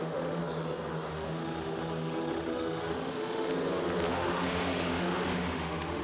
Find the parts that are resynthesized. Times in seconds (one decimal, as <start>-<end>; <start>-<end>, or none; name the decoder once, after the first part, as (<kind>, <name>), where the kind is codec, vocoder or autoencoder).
0.0-0.4 (autoencoder, DAC-VAE); 1.1-3.5; 4.1-6.0